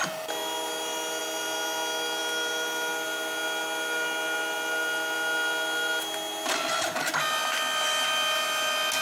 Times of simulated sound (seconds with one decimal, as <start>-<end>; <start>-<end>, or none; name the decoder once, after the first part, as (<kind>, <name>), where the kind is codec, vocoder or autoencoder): none